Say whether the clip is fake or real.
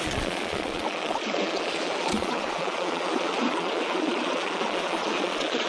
fake